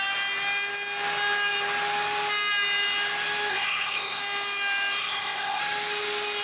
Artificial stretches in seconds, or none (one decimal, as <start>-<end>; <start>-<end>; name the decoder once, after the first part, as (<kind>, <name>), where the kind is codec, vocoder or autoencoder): 3.5-4.2 (codec, ZipCodec); 5.0-5.6